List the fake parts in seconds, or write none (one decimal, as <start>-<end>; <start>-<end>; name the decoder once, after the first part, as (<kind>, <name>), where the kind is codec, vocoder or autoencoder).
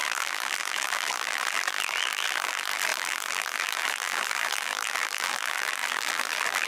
0.0-6.7 (vocoder, BigVGAN v2)